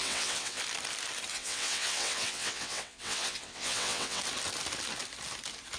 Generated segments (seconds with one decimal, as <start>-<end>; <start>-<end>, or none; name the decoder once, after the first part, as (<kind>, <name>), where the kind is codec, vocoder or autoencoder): 0.0-0.6 (vocoder, WaveNeXt); 1.3-4.2